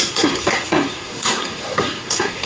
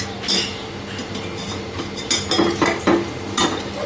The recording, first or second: second